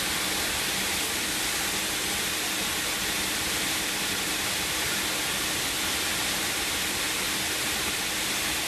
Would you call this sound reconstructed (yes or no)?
no